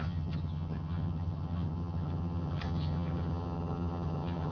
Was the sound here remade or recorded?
remade